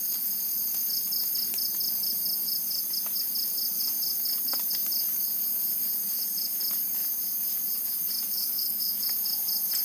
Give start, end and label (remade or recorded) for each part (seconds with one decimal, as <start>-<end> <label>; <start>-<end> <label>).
0.0-8.4 recorded; 8.4-9.0 remade; 9.0-9.8 recorded